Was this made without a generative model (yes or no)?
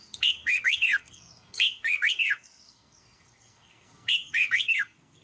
no